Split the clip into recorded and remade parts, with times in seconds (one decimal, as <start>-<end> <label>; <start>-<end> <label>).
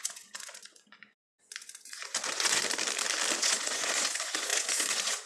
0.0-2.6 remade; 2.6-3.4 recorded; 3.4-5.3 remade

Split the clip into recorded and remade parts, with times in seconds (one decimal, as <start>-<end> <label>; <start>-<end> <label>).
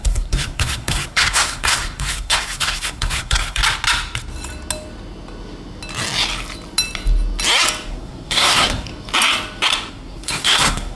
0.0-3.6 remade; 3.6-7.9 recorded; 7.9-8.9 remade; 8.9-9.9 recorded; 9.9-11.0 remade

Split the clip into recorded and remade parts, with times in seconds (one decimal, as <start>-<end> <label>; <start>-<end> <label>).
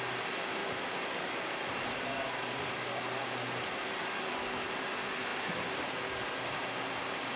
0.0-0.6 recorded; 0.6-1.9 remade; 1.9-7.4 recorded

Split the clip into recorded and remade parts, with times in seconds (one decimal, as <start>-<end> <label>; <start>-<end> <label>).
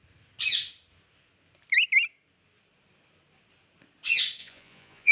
0.0-4.4 recorded; 4.4-5.1 remade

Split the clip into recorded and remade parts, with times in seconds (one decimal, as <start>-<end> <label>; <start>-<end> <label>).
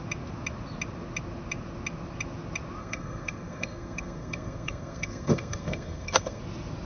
0.0-2.8 recorded; 2.8-6.4 remade; 6.4-6.9 recorded